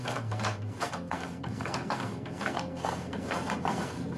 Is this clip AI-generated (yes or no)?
yes